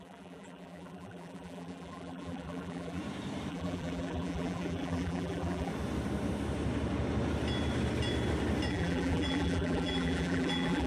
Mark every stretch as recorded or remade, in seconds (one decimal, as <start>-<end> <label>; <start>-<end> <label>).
0.0-3.0 remade; 3.0-3.5 recorded; 3.5-5.7 remade; 5.7-8.7 recorded; 8.7-10.9 remade